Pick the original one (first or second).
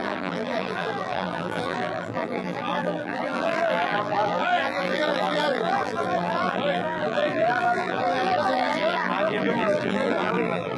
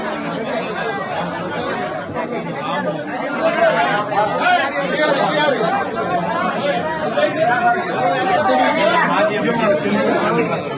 second